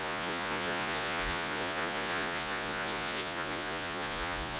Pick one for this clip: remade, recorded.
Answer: remade